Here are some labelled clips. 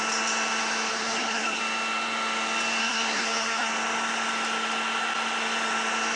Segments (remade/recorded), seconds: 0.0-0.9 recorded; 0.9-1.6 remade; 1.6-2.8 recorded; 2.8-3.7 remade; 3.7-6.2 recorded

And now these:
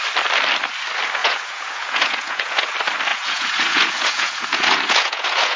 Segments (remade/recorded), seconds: 0.0-1.2 recorded; 1.2-2.7 remade; 2.7-3.1 recorded; 3.1-5.6 remade